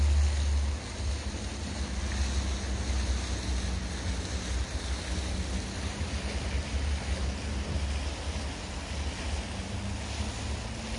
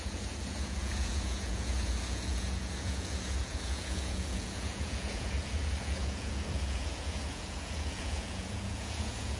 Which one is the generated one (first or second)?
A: second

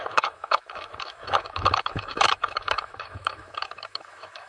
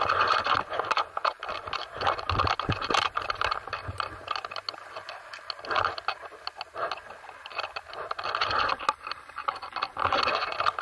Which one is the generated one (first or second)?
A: first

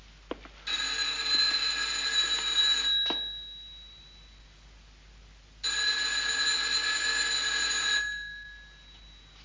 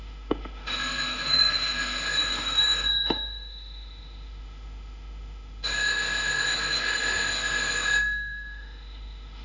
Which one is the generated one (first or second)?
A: second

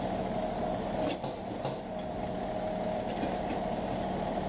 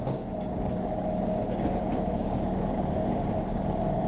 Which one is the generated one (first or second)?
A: second